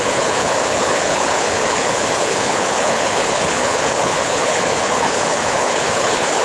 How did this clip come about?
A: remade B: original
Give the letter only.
A